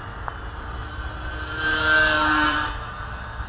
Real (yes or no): no